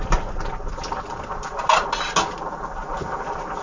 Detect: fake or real real